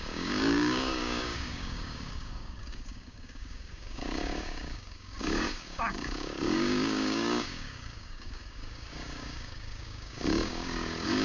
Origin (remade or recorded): remade